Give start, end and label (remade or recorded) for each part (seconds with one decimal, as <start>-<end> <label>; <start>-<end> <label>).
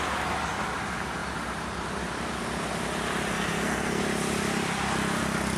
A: 0.0-3.3 recorded; 3.3-4.0 remade; 4.0-5.6 recorded